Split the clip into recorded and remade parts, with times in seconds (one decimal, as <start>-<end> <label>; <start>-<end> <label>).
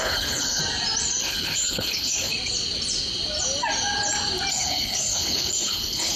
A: 0.0-0.6 remade; 0.6-1.2 recorded; 1.2-2.3 remade; 2.3-4.5 recorded; 4.5-6.2 remade